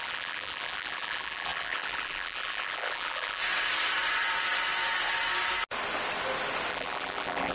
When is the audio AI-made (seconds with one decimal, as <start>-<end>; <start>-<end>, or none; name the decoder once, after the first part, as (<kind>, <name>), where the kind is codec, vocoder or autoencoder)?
0.0-3.4 (vocoder, BigVGAN v2); 6.7-7.5